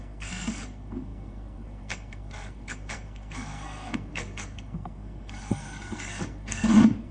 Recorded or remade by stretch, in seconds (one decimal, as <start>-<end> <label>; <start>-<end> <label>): 0.0-7.1 remade